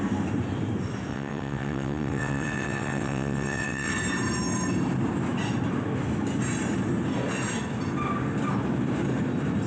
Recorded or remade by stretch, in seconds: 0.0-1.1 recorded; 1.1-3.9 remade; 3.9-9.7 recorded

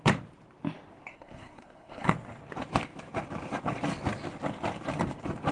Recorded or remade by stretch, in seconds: 0.0-1.1 recorded; 1.1-2.1 remade; 2.1-5.5 recorded

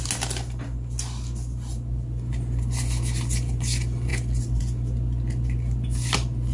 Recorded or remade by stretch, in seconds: 0.0-6.5 recorded

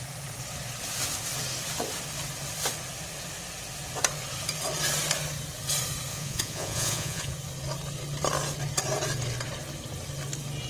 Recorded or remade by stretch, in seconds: 0.0-6.1 recorded; 6.1-7.3 remade; 7.3-10.7 recorded

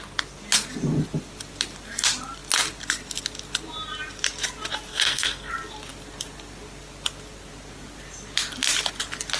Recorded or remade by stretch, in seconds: 0.0-4.9 recorded; 4.9-5.5 remade; 5.5-9.4 recorded